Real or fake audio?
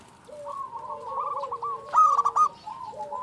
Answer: real